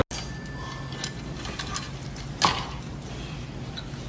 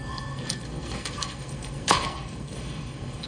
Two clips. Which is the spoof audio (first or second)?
second